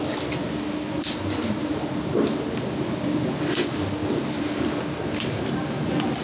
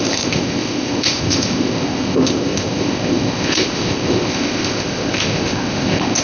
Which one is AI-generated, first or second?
second